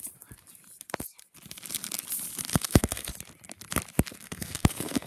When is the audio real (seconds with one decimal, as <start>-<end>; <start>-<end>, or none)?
0.0-2.5; 3.1-4.1